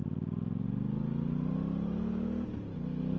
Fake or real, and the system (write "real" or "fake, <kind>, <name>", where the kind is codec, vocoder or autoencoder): real